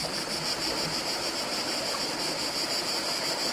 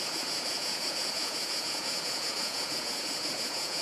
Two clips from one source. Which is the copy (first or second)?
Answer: second